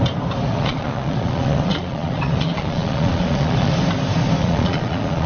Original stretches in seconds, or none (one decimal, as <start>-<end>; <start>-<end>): 0.0-0.5; 3.7-4.4